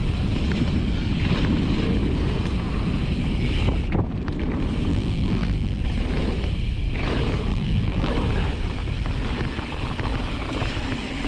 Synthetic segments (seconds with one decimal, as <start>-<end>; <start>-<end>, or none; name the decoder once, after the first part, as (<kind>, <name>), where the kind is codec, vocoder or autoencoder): 4.9-5.8 (vocoder, BigVGAN v2); 7.5-8.1